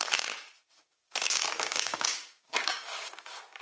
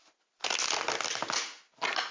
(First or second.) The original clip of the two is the second